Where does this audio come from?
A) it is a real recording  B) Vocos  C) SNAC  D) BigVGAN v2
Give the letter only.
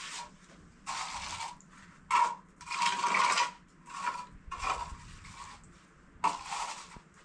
A